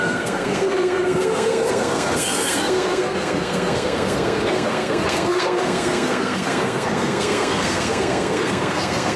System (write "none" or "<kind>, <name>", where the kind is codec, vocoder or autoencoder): codec, SNAC